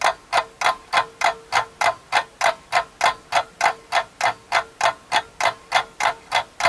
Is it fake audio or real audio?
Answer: real